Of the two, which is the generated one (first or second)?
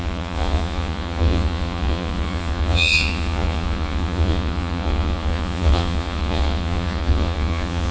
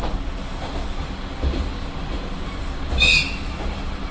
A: first